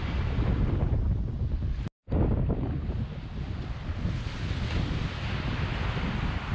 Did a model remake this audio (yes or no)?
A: no